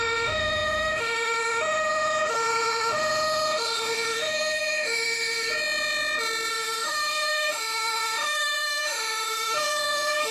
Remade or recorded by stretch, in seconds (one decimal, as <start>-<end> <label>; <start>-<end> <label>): 0.0-5.5 remade; 5.5-6.5 recorded; 6.5-10.3 remade